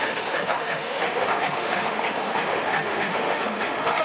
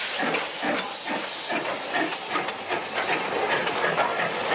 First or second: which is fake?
first